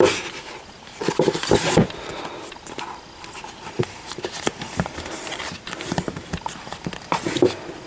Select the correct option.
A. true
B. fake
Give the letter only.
A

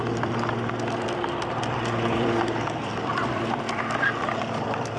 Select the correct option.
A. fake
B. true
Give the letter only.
A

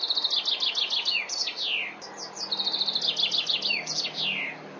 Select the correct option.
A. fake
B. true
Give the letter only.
B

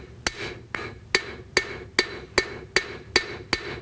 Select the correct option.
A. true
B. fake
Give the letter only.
A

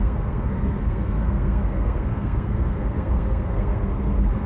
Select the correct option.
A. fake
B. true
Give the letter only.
A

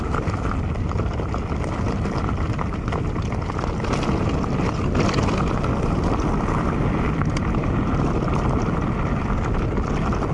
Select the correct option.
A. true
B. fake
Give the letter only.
A